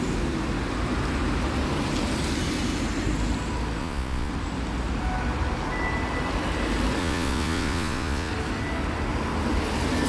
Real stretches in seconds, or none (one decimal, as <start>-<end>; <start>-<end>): 0.0-3.8; 4.3-7.0; 8.3-10.1